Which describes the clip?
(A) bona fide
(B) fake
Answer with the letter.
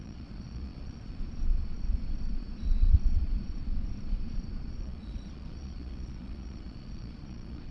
B